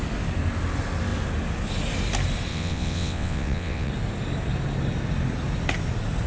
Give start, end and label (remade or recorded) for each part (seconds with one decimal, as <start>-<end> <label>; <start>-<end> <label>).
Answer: 0.0-2.5 recorded; 2.5-3.9 remade; 3.9-6.3 recorded